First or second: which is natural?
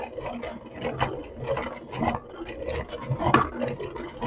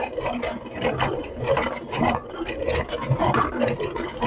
first